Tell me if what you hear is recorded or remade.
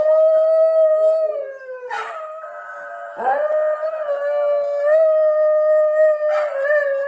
recorded